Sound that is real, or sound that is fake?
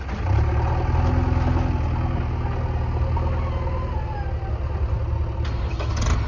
real